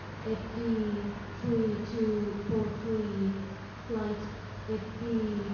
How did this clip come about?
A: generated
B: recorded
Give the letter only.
B